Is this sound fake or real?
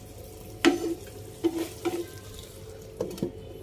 real